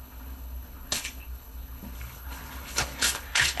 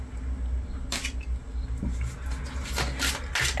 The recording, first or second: second